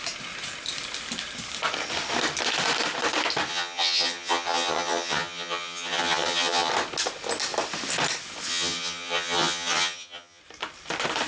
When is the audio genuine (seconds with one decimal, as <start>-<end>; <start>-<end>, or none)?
0.0-3.5; 6.7-8.5; 10.4-11.3